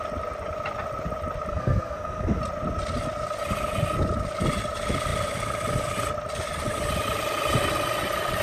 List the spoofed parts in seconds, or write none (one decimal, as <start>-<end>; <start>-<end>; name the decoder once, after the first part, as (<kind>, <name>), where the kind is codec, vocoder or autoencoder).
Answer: 1.5-2.4 (codec, SNAC)